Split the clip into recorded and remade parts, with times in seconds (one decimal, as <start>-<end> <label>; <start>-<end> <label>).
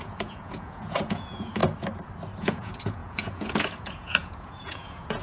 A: 0.0-1.6 remade; 1.6-2.4 recorded; 2.4-5.2 remade